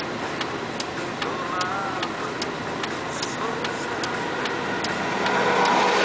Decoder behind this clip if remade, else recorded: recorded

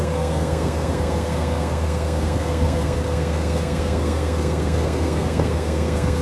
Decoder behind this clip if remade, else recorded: remade, codec, SNAC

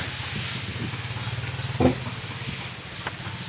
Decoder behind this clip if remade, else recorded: recorded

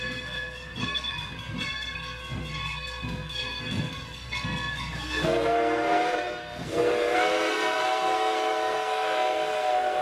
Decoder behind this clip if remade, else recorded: remade, codec, SNAC